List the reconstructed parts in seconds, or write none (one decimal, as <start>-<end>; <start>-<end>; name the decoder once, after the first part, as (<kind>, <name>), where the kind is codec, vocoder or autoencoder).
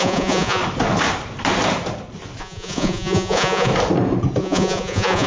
0.0-0.6 (vocoder, Vocos); 2.4-3.7; 4.4-5.3